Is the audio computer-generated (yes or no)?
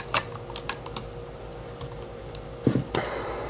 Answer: no